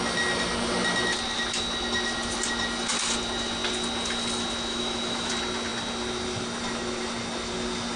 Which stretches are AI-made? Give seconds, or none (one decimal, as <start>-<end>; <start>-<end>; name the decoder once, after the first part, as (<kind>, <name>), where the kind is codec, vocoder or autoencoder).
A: 4.7-5.3 (autoencoder, DAC-VAE)